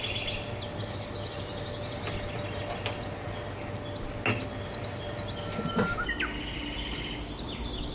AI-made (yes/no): no